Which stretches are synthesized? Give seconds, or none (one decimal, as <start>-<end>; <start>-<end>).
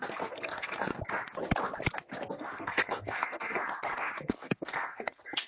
0.0-0.9; 2.0-3.6; 4.2-5.5